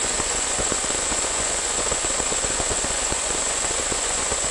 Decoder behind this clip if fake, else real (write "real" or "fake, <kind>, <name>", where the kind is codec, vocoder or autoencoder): fake, vocoder, Vocos